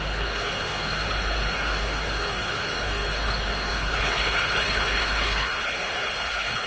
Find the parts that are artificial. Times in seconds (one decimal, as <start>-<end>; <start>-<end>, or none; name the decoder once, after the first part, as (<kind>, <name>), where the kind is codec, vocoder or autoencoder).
0.0-6.7 (codec, HILCodec)